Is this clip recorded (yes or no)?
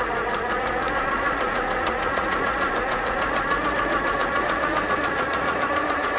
no